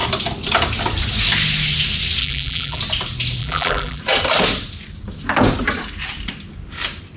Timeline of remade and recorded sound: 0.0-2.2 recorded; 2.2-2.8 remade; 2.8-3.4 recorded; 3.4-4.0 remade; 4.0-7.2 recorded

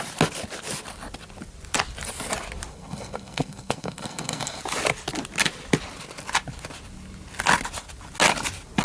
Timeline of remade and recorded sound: 0.0-2.7 recorded; 2.7-4.6 remade; 4.6-8.8 recorded

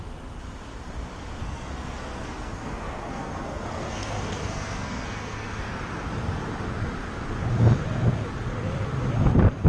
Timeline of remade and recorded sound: 0.0-1.4 recorded; 1.4-5.8 remade; 5.8-9.7 recorded

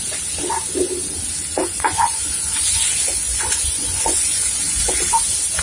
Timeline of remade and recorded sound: 0.0-1.6 recorded; 1.6-5.0 remade; 5.0-5.6 recorded